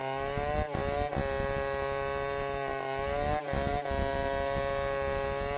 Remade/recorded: recorded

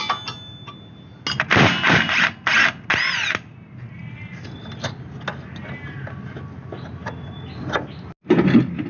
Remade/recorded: recorded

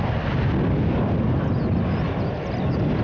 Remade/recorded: recorded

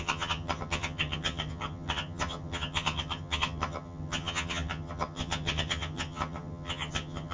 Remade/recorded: remade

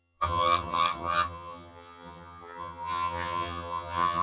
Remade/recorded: remade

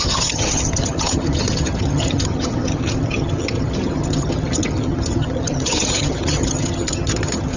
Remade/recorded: remade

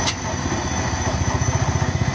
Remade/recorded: recorded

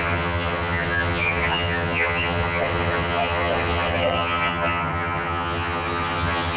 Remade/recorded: remade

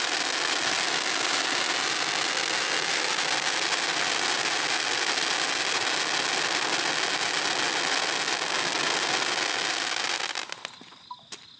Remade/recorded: recorded